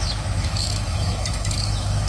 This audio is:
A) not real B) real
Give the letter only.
A